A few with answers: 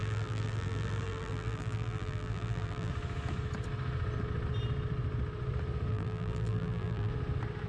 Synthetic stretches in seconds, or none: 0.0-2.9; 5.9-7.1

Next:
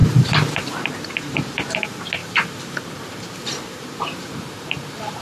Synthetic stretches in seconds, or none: 0.0-1.8; 2.2-5.2

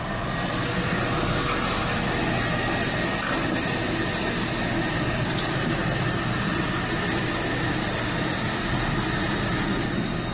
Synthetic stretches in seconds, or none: 3.4-4.1

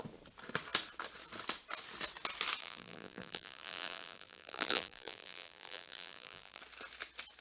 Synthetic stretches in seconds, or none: 2.6-6.6

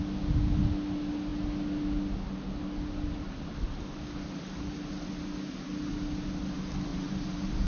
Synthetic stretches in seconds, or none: 6.9-7.7

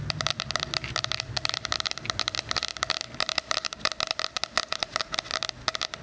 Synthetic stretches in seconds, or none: 0.0-2.7; 3.3-4.4; 5.4-6.0

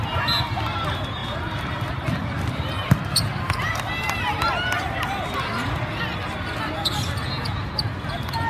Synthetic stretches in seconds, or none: 1.2-2.5